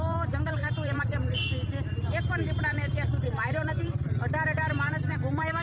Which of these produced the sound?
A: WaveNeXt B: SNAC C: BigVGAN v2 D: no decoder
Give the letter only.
C